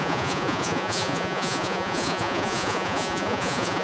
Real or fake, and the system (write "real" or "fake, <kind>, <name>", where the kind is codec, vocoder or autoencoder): fake, vocoder, Vocos